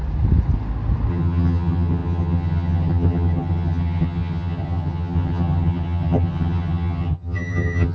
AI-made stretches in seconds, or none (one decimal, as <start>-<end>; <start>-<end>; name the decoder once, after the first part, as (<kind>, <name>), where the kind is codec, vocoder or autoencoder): 1.1-7.9 (vocoder, HiFi-GAN)